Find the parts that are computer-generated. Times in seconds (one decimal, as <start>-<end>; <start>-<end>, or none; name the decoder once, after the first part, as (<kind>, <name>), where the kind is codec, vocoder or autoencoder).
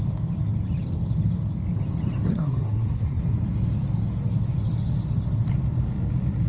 2.3-3.2 (codec, SNAC)